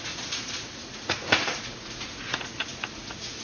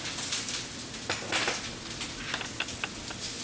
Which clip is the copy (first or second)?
first